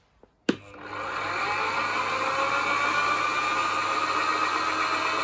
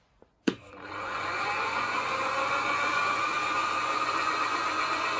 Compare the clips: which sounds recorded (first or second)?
first